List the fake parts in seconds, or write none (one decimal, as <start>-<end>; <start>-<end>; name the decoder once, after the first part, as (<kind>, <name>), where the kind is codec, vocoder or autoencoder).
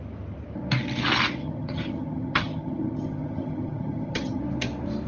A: 1.4-4.4 (vocoder, HiFi-GAN)